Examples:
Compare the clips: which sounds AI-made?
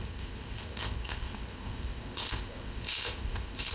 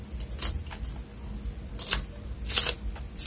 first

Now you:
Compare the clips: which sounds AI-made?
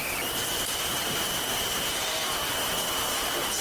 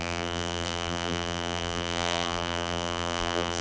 second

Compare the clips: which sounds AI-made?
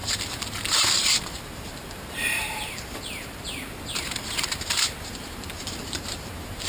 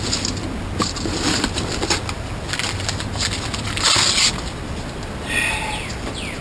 first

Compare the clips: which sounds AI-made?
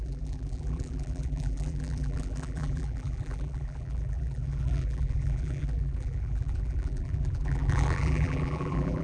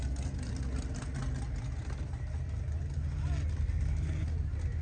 first